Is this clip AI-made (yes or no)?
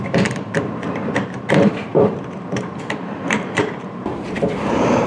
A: yes